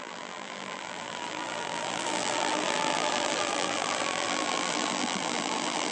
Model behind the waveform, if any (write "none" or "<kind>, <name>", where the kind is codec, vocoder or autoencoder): vocoder, BigVGAN v2